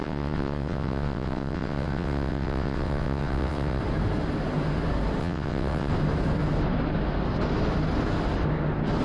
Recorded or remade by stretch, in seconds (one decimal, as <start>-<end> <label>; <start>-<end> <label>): 0.0-3.8 remade; 3.8-5.2 recorded; 5.2-5.9 remade; 5.9-9.0 recorded